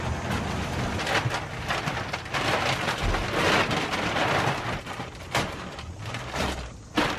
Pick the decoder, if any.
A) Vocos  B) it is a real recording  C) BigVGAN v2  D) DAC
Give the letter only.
B